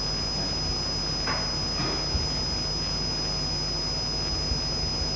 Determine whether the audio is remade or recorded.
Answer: recorded